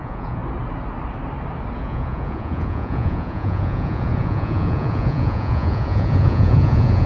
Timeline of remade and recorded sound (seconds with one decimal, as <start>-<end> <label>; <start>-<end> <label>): 0.0-0.4 remade; 0.4-1.8 recorded; 1.8-7.1 remade